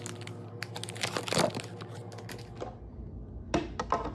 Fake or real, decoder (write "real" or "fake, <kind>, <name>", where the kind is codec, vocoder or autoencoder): real